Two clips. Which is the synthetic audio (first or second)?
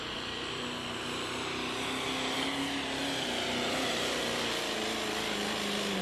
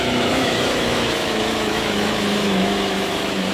second